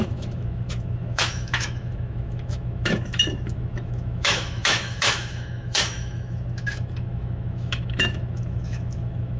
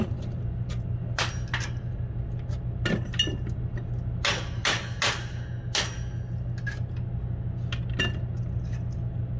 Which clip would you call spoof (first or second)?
first